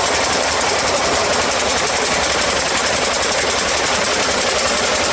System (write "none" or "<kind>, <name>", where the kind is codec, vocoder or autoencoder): none